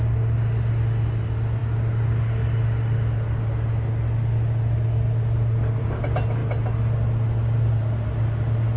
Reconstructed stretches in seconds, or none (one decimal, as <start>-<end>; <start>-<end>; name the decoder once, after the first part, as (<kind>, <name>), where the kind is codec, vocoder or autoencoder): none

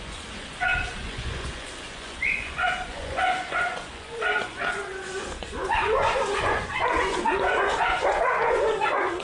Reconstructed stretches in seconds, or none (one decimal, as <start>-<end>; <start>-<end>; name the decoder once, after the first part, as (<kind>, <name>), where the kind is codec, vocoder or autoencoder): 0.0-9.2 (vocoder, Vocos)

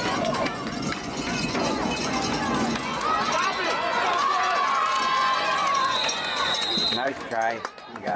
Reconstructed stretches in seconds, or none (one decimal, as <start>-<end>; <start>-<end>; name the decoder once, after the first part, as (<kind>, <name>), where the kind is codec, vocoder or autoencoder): 0.0-8.2 (vocoder, Vocos)